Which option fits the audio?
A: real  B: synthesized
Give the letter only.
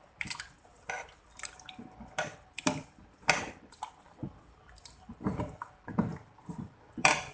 B